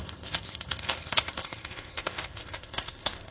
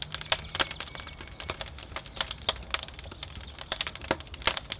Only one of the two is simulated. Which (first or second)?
first